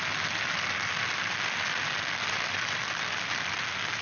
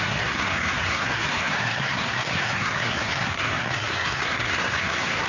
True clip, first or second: first